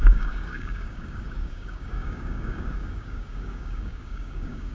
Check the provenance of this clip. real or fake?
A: fake